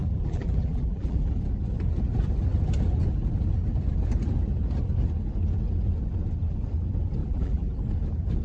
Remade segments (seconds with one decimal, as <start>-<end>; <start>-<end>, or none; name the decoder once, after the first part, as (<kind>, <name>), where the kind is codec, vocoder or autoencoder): 0.0-1.3 (vocoder, BigVGAN v2); 7.2-7.8